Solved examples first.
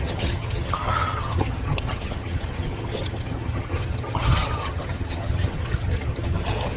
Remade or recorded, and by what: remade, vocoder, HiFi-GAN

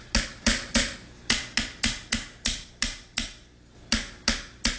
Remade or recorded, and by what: recorded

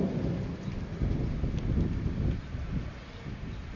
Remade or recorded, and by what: recorded